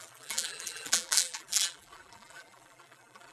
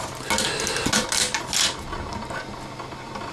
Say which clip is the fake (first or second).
first